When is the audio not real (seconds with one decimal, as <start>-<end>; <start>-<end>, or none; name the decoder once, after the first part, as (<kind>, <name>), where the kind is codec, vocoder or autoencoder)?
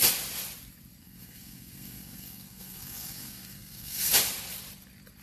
1.0-4.1 (codec, SNAC)